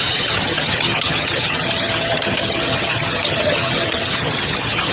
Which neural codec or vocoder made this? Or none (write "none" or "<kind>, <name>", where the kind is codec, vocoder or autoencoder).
vocoder, HiFi-GAN